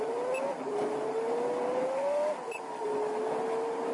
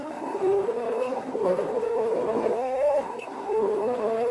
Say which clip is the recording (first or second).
first